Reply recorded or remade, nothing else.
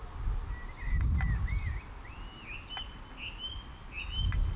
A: recorded